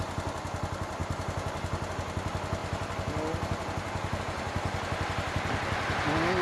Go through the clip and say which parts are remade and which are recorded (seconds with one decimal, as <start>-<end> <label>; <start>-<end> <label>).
0.0-6.4 recorded